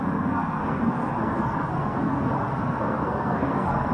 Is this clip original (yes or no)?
no